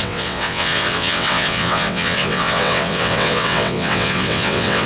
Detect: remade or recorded remade